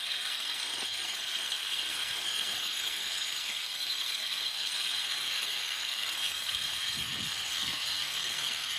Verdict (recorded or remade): remade